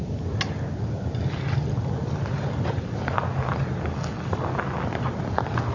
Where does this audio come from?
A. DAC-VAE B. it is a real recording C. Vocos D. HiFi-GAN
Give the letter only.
B